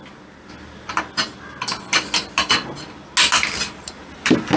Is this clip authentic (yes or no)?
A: yes